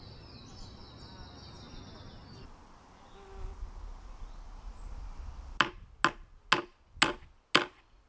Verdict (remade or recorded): recorded